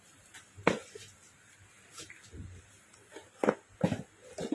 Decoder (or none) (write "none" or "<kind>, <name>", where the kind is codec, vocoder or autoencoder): none